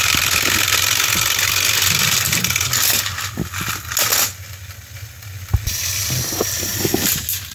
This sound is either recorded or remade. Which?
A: recorded